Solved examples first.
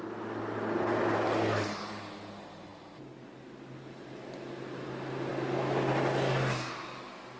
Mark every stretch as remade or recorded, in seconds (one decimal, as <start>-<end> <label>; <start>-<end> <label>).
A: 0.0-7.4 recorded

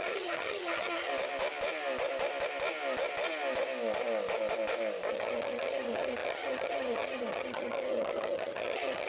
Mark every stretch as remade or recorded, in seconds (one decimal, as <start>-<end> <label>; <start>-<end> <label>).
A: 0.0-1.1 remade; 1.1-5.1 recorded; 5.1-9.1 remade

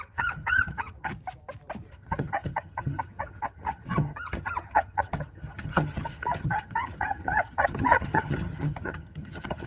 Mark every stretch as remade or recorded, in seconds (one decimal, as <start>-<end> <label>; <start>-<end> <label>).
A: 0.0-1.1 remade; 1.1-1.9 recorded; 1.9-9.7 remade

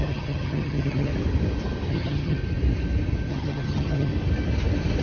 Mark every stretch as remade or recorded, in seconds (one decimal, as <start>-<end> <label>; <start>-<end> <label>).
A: 0.0-1.1 remade; 1.1-1.9 recorded; 1.9-2.4 remade; 2.4-3.3 recorded; 3.3-4.1 remade; 4.1-5.0 recorded

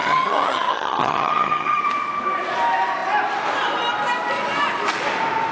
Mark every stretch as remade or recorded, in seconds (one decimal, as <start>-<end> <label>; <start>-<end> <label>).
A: 0.0-1.8 remade; 1.8-5.5 recorded

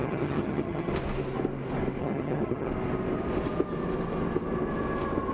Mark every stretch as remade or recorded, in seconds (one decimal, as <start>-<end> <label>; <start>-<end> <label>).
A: 0.0-0.9 remade; 0.9-2.0 recorded; 2.0-2.7 remade; 2.7-5.3 recorded